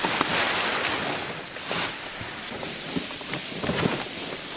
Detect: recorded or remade remade